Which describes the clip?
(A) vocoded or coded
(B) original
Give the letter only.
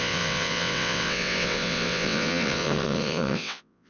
A